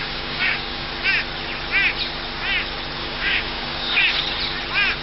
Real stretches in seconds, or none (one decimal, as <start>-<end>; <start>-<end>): 0.9-3.0; 4.0-5.0